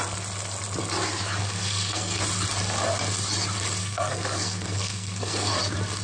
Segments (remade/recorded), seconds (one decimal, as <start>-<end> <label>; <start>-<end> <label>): 0.0-1.4 recorded; 1.4-2.2 remade; 2.2-3.8 recorded; 3.8-5.5 remade; 5.5-6.0 recorded